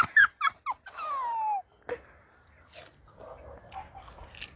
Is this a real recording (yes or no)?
yes